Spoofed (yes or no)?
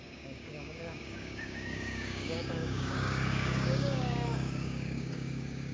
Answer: yes